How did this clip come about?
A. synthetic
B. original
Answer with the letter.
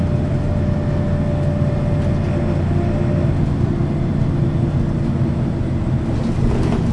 B